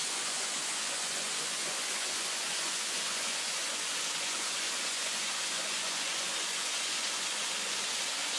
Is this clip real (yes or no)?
no